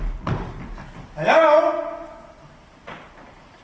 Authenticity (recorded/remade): recorded